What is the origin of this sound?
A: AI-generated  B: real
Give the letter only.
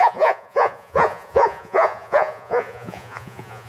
A